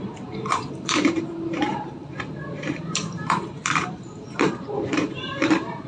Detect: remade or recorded remade